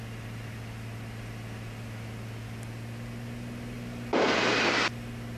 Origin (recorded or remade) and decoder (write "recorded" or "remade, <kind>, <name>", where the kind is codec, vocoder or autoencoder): recorded